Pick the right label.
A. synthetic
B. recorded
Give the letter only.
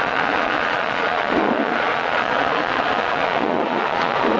A